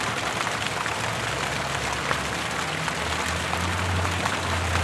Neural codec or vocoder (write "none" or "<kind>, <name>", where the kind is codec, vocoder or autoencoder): none